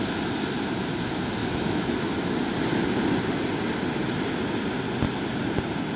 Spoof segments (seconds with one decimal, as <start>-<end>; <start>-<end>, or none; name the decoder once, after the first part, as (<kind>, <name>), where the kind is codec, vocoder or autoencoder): 1.4-2.0 (autoencoder, DAC-VAE)